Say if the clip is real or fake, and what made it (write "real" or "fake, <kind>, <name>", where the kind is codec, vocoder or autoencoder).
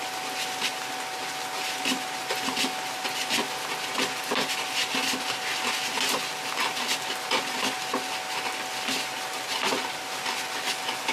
real